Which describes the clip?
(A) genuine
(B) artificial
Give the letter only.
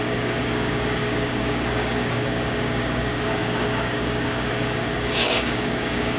B